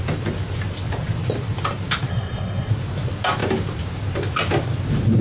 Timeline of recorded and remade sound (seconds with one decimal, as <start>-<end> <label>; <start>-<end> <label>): 0.0-2.1 recorded; 2.1-2.7 remade; 2.7-5.2 recorded